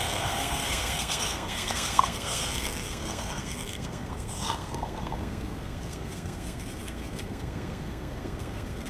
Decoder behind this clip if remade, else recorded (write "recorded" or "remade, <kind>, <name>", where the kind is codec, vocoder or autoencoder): remade, codec, SNAC